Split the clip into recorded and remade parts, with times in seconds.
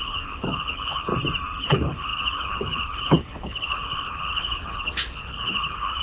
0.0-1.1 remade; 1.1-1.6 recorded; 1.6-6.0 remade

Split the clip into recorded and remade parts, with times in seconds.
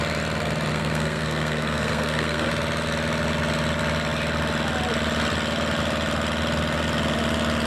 0.0-0.7 recorded; 0.7-2.5 remade; 2.5-7.7 recorded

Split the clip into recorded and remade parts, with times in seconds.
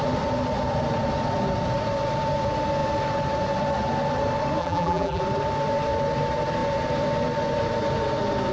0.0-4.6 recorded; 4.6-5.2 remade; 5.2-8.5 recorded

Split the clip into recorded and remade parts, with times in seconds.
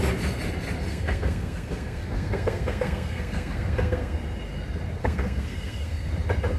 0.0-0.9 recorded; 0.9-4.2 remade; 4.2-5.0 recorded; 5.0-6.1 remade; 6.1-6.6 recorded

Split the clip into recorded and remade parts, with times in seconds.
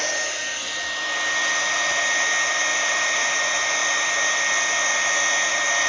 0.0-2.7 recorded; 2.7-3.4 remade; 3.4-5.9 recorded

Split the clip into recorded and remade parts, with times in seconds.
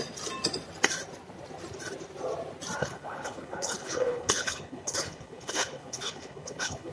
0.0-2.8 recorded; 2.8-6.9 remade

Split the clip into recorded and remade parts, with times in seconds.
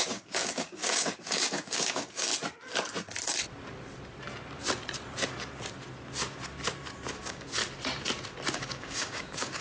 0.0-2.3 remade; 2.3-7.1 recorded; 7.1-7.6 remade; 7.6-8.5 recorded; 8.5-9.6 remade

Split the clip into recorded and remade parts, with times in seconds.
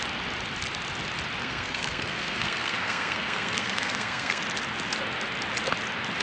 0.0-1.4 recorded; 1.4-4.4 remade; 4.4-6.2 recorded